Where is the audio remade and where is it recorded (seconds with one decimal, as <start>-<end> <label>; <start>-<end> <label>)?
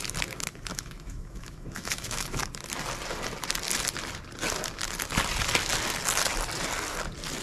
0.0-0.7 recorded; 0.7-2.4 remade; 2.4-7.4 recorded